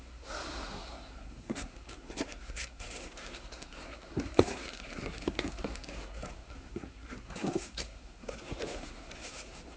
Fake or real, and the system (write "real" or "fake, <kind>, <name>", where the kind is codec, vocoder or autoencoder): fake, codec, SNAC